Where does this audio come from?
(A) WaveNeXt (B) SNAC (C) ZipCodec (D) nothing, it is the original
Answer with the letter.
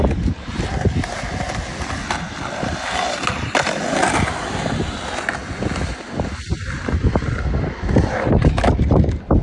D